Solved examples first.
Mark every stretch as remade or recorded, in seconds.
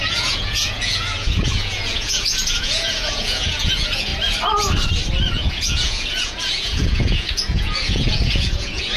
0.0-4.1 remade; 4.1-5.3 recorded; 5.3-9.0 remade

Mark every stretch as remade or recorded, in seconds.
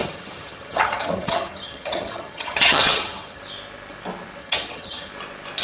0.0-3.4 remade; 3.4-4.4 recorded; 4.4-5.1 remade; 5.1-5.6 recorded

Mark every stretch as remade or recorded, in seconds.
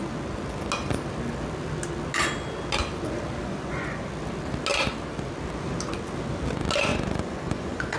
0.0-3.4 recorded; 3.4-4.1 remade; 4.1-6.9 recorded; 6.9-8.0 remade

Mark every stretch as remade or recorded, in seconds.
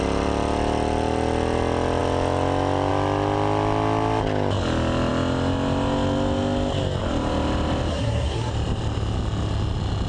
0.0-7.9 recorded; 7.9-8.5 remade; 8.5-10.1 recorded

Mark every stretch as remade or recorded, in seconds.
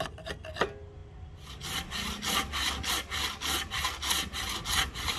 0.0-5.2 recorded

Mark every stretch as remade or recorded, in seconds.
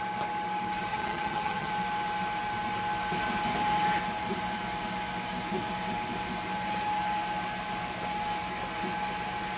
0.0-0.9 recorded; 0.9-1.7 remade; 1.7-9.6 recorded